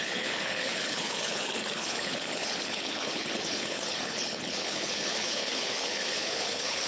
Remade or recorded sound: remade